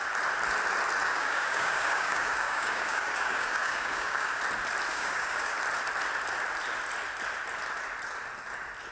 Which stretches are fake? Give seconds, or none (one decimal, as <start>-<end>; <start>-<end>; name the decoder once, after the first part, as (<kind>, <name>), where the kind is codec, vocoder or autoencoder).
1.0-4.4 (codec, DAC); 4.9-5.5